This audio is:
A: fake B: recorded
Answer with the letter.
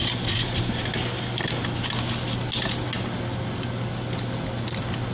B